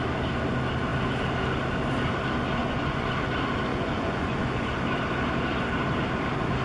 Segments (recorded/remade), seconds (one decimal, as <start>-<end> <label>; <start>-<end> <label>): 0.0-2.6 recorded; 2.6-3.3 remade; 3.3-3.7 recorded; 3.7-4.7 remade; 4.7-6.6 recorded